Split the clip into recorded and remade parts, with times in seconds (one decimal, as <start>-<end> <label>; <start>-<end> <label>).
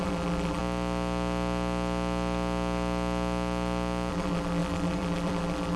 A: 0.0-0.6 remade; 0.6-4.1 recorded; 4.1-5.8 remade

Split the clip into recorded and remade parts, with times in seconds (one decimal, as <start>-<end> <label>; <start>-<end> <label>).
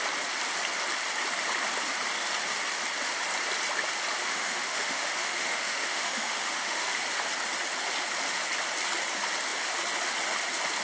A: 0.0-4.2 recorded; 4.2-7.0 remade; 7.0-10.8 recorded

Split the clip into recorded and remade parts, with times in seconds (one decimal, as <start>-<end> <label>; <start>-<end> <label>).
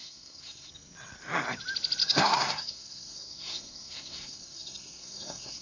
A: 0.0-0.7 remade; 0.7-2.0 recorded; 2.0-5.6 remade